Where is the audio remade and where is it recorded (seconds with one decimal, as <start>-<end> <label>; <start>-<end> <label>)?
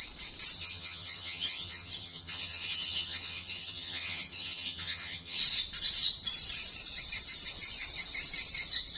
0.0-0.6 recorded; 0.6-5.4 remade; 5.4-9.0 recorded